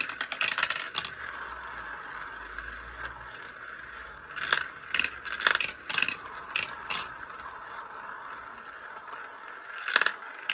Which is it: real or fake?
real